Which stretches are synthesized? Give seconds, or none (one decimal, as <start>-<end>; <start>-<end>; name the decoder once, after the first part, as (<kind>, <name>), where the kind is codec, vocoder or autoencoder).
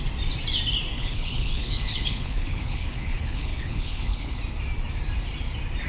0.9-4.4 (codec, HILCodec)